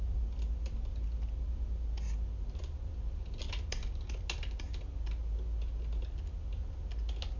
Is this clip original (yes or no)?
yes